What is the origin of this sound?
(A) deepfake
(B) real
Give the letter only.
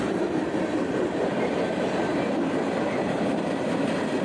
B